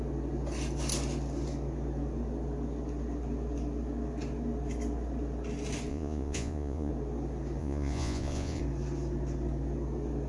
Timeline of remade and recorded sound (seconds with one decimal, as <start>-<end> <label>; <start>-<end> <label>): 0.0-5.9 recorded; 5.9-6.9 remade; 6.9-7.6 recorded; 7.6-8.6 remade; 8.6-10.3 recorded